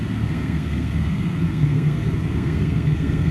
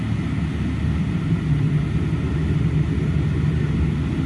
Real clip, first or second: second